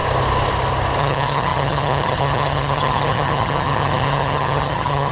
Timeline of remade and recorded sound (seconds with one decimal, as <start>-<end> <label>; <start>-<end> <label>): 0.0-1.0 recorded; 1.0-5.1 remade